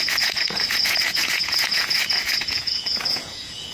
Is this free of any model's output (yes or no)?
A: no